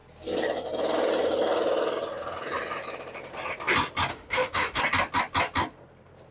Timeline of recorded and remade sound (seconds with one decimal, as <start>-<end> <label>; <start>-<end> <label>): 0.0-4.1 recorded; 4.1-4.8 remade; 4.8-6.3 recorded